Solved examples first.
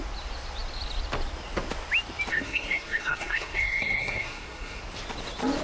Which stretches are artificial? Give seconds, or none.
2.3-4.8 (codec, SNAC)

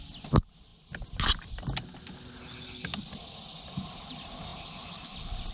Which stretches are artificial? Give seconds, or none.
none

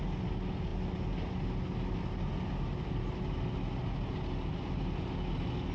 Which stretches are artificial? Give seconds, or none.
none

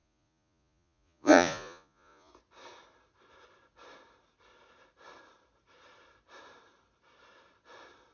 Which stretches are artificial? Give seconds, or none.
0.0-2.3 (vocoder, Vocos)

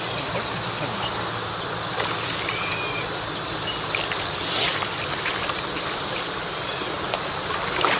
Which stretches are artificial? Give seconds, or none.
none

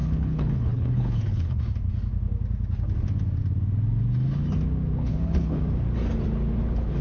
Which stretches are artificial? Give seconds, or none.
0.0-1.6 (codec, HILCodec); 5.0-5.6

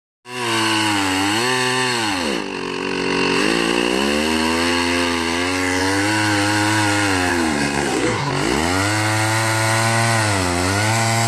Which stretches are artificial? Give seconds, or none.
7.3-8.3 (codec, SNAC)

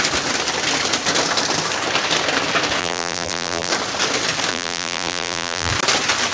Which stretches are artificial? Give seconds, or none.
2.8-3.7 (vocoder, BigVGAN v2); 4.5-5.7